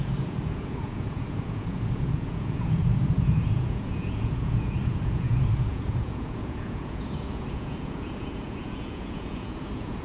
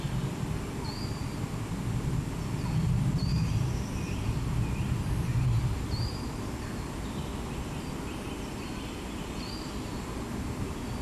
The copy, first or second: first